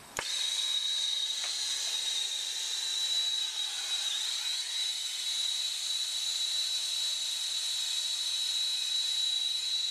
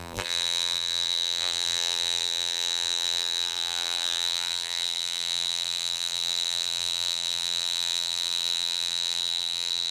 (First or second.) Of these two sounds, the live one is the first